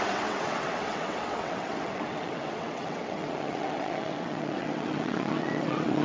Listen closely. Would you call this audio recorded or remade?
remade